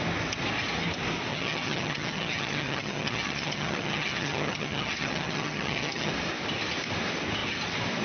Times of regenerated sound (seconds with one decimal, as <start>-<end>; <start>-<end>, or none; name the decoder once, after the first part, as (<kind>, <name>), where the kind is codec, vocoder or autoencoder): 1.3-6.1 (vocoder, HiFi-GAN)